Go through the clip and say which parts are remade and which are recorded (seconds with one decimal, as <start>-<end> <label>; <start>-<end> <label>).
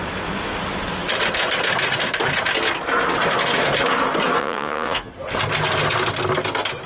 0.0-4.4 recorded; 4.4-5.1 remade; 5.1-6.9 recorded